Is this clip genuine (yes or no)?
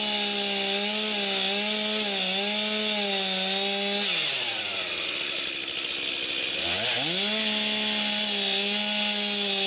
yes